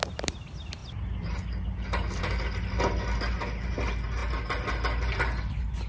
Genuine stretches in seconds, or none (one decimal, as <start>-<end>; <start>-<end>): 0.0-5.9